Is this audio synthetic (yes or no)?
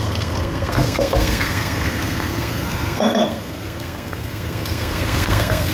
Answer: yes